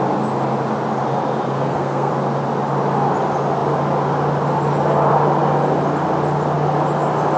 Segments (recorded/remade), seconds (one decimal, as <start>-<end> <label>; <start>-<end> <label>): 0.0-1.5 recorded; 1.5-2.1 remade; 2.1-7.4 recorded